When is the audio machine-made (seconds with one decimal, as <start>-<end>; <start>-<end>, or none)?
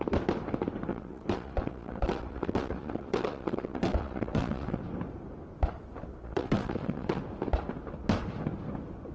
0.9-4.8; 6.2-7.2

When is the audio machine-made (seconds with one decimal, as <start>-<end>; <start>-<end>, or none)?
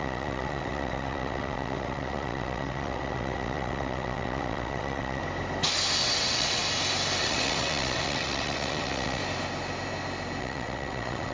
0.0-5.2; 6.0-6.6; 7.2-9.2; 10.4-11.3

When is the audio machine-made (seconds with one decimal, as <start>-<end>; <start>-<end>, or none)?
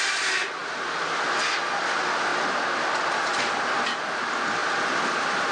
none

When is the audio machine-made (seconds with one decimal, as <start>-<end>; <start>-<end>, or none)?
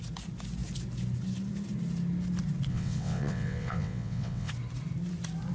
2.7-4.5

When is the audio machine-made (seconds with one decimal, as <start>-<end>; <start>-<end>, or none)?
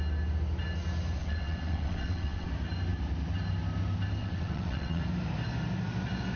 1.2-2.5; 4.2-5.0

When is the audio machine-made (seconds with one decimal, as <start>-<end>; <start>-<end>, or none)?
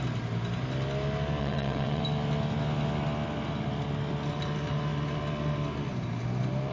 1.4-2.0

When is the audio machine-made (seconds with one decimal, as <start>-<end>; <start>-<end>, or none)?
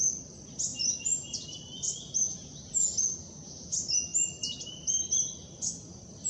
none